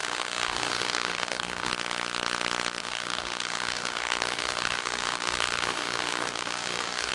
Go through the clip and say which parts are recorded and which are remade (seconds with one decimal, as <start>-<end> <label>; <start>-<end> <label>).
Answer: 0.0-1.7 remade; 1.7-2.8 recorded; 2.8-7.1 remade